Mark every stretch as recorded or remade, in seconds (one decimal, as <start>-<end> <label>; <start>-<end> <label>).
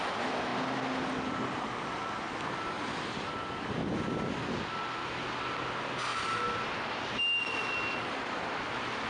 0.0-9.1 recorded